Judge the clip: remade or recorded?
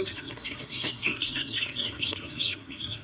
remade